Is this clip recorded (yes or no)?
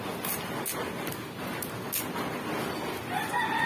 yes